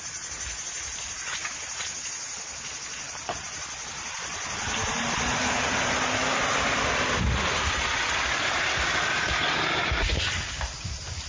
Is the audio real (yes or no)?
yes